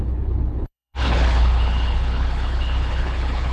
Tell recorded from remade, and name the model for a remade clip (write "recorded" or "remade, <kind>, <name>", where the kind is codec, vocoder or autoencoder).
remade, codec, HILCodec